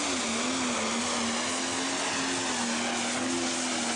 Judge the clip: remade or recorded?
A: recorded